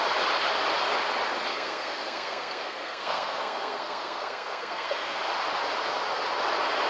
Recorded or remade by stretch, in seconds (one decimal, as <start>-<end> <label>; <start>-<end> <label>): 0.0-1.5 recorded; 1.5-5.2 remade; 5.2-6.9 recorded